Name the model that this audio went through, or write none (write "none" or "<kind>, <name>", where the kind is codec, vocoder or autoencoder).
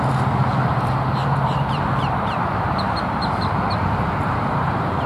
vocoder, BigVGAN v2